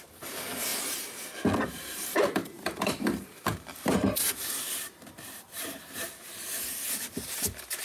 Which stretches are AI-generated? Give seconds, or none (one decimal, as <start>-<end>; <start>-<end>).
0.0-0.7; 1.6-7.8